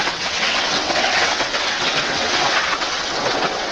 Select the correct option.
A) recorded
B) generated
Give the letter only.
B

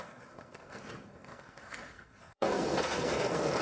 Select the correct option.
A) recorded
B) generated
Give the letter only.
B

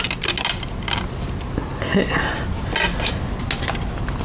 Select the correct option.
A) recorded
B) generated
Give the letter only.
A